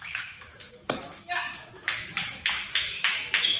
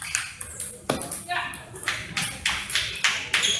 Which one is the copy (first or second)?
first